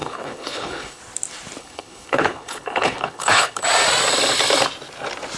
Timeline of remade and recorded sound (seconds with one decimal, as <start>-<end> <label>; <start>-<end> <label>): 0.0-1.0 remade; 1.0-1.6 recorded; 1.6-3.6 remade; 3.6-5.4 recorded